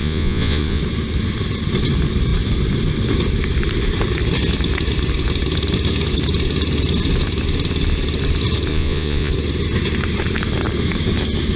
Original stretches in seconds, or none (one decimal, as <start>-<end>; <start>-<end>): 0.8-8.7; 9.3-11.6